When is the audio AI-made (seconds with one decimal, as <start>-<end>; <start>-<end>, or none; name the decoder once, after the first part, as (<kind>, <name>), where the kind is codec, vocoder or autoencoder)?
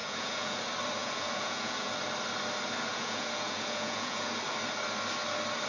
0.0-0.6 (vocoder, Vocos); 1.0-1.9; 2.9-4.3